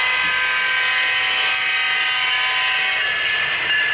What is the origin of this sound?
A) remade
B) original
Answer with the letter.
B